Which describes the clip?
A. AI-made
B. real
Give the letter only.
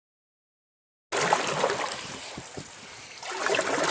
B